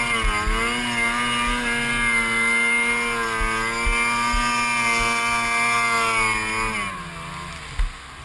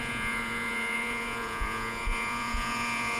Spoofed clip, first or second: second